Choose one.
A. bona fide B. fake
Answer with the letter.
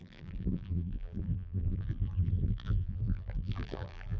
B